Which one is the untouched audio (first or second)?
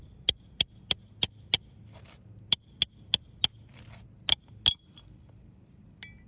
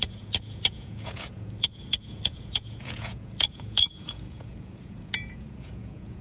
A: first